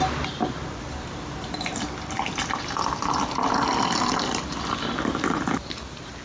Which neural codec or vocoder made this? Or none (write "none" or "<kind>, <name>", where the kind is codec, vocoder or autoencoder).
none